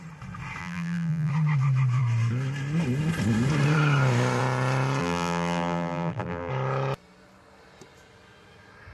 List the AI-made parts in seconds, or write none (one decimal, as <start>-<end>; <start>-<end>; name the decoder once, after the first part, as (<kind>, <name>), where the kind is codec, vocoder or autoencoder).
0.6-1.3 (vocoder, BigVGAN v2); 5.0-6.5